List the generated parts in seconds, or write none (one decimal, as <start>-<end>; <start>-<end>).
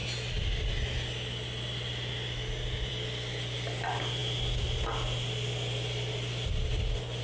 none